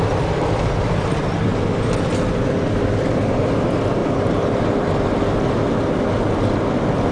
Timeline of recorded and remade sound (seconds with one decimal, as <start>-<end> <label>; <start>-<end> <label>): 0.0-7.1 recorded